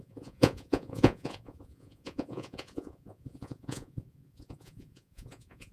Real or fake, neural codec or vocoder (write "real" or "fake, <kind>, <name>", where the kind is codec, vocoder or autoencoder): fake, vocoder, Vocos